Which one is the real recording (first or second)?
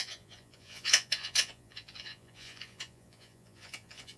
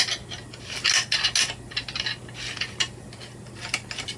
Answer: second